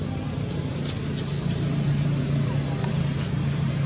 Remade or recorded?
recorded